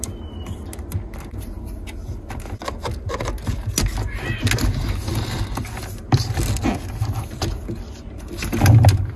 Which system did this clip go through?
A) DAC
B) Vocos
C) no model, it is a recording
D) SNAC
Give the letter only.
C